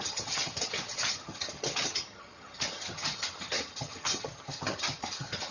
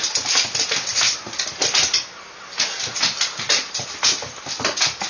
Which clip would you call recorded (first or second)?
second